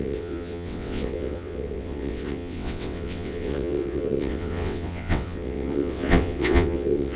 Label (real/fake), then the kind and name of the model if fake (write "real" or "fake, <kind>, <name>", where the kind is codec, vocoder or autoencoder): fake, vocoder, WaveNeXt